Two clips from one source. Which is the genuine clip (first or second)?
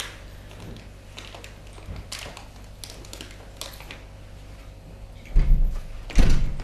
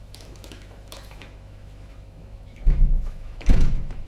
first